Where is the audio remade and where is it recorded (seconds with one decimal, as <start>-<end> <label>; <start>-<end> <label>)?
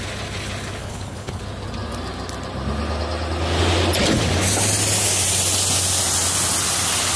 0.0-0.8 recorded; 0.8-1.4 remade; 1.4-7.2 recorded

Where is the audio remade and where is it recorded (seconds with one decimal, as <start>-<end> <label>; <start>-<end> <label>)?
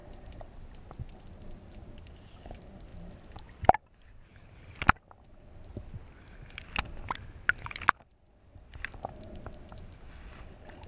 0.0-10.9 recorded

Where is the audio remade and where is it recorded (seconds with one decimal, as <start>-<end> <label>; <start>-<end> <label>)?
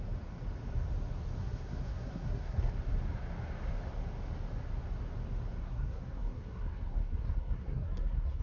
0.0-1.4 recorded; 1.4-2.7 remade; 2.7-5.6 recorded; 5.6-8.4 remade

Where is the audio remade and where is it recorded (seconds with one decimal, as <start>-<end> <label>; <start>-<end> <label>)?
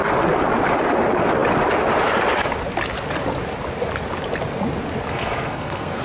0.0-5.1 recorded; 5.1-6.0 remade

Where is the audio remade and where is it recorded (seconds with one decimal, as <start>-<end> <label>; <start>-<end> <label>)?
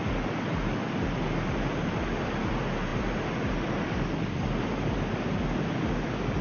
0.0-6.4 recorded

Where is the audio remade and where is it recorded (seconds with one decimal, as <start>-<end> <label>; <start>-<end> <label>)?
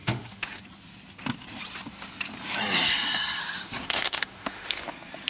0.0-0.6 remade; 0.6-3.4 recorded; 3.4-4.8 remade; 4.8-5.3 recorded